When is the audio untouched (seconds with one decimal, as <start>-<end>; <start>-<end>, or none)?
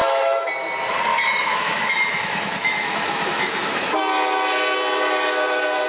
0.5-1.1; 4.0-5.9